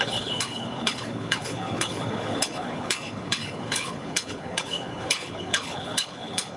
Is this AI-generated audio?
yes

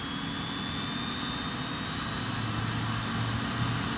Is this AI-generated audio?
no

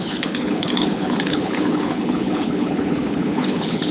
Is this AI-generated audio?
yes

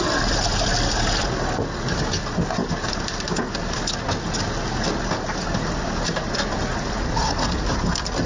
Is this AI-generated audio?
no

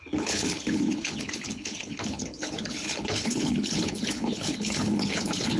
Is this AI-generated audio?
yes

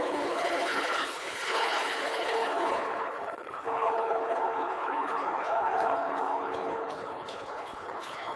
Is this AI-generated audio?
yes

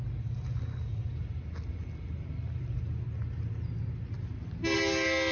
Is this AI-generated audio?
no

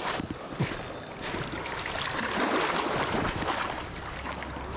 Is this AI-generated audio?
no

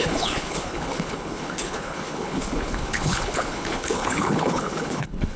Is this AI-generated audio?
yes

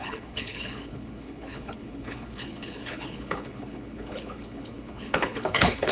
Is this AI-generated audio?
yes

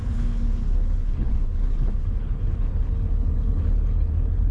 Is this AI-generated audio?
yes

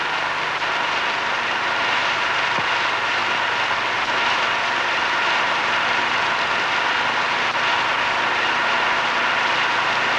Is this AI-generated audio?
no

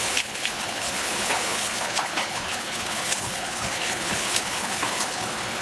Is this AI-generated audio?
yes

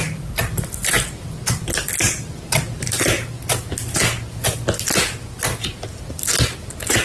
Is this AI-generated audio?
no